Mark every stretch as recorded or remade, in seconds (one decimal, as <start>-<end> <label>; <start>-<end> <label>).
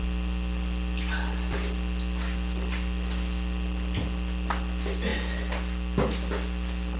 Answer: 0.0-7.0 recorded